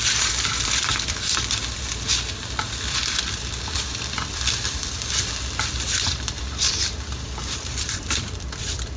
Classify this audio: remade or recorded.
remade